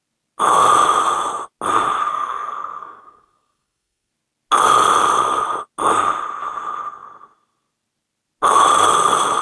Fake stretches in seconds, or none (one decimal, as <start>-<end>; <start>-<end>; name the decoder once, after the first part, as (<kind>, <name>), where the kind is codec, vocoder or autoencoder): 2.1-4.1 (codec, SNAC)

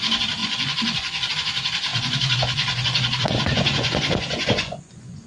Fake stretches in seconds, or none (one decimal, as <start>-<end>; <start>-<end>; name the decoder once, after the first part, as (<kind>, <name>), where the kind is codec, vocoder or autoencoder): 0.4-1.3 (vocoder, Vocos); 1.9-5.3

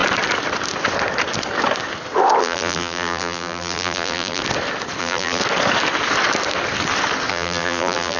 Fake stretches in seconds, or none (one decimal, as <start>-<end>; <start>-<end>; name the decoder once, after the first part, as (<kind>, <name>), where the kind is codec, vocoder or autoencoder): 2.4-4.4 (vocoder, BigVGAN v2); 5.0-5.4; 7.3-8.2

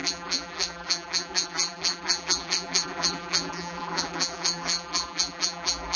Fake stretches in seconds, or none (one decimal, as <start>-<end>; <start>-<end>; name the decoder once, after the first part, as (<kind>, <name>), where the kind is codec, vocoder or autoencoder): 0.0-6.0 (vocoder, BigVGAN v2)

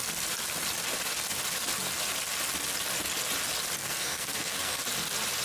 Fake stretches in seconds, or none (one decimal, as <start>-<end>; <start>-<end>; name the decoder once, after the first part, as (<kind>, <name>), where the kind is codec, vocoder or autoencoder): 3.8-4.8 (codec, SNAC)

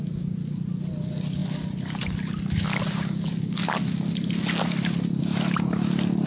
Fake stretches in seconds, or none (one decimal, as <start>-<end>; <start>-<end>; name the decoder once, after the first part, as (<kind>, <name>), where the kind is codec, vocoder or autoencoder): none

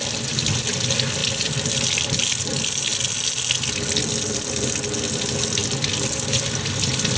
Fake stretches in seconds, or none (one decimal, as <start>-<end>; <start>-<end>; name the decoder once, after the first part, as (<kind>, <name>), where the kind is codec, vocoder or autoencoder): none

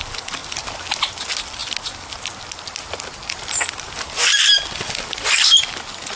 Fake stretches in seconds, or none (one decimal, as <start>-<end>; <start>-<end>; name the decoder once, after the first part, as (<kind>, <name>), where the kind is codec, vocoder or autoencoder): none